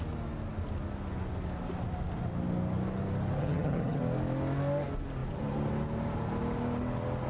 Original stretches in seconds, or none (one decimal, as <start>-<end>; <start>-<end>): 0.0-3.4; 4.0-7.3